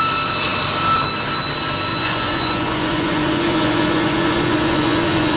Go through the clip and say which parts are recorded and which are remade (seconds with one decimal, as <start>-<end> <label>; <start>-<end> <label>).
0.0-1.9 recorded; 1.9-5.4 remade